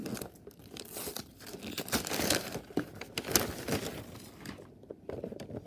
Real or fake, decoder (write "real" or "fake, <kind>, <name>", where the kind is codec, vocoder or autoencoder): real